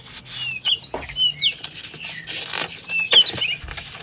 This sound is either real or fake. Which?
real